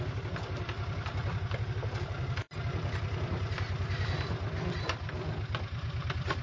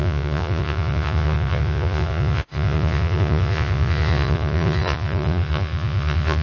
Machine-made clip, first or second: second